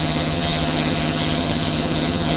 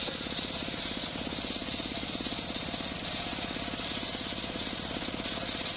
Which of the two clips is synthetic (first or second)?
first